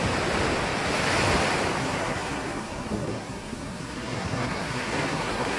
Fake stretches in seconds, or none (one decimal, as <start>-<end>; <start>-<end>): 1.8-5.6